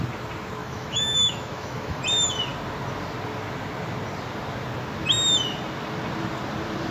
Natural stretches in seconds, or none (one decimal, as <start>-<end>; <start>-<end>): 0.0-0.6; 2.0-6.9